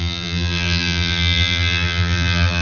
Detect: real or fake fake